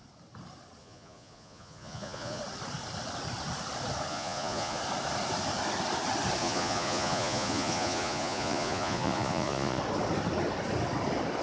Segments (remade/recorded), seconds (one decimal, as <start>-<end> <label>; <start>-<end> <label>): 0.0-0.8 recorded; 0.8-2.4 remade; 2.4-4.1 recorded; 4.1-4.8 remade; 4.8-6.4 recorded; 6.4-9.8 remade; 9.8-11.4 recorded